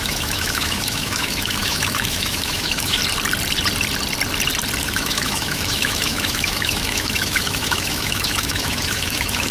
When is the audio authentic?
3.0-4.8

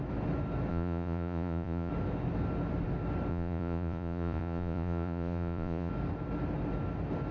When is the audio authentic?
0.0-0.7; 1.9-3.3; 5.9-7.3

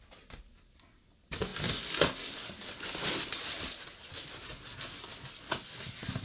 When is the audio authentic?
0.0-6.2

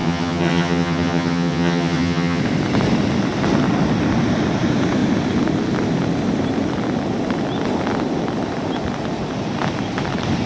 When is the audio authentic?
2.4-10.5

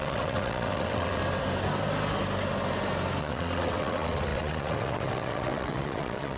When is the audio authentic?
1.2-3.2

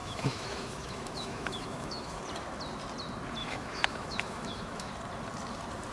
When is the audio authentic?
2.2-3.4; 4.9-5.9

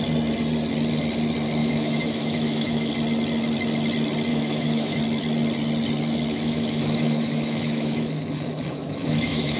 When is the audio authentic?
0.0-1.6; 2.9-4.3; 5.0-6.3